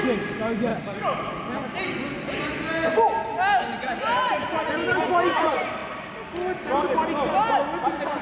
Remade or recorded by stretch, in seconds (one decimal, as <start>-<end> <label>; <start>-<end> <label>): 0.0-8.2 recorded